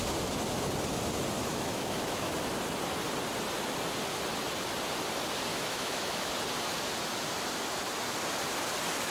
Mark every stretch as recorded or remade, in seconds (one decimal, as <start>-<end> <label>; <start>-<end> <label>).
0.0-1.5 recorded; 1.5-2.3 remade; 2.3-5.5 recorded; 5.5-6.3 remade; 6.3-9.1 recorded